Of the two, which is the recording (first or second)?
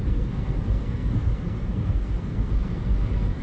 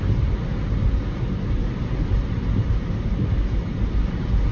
second